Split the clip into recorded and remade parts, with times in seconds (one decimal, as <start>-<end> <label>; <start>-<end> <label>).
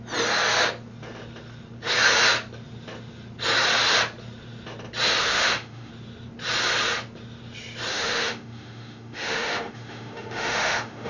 0.0-5.2 recorded; 5.2-5.9 remade; 5.9-7.9 recorded; 7.9-11.1 remade